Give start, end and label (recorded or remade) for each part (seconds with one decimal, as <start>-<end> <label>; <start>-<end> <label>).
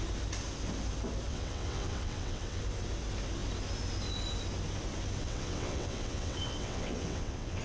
0.0-1.3 recorded; 1.3-2.6 remade; 2.6-5.2 recorded; 5.2-7.6 remade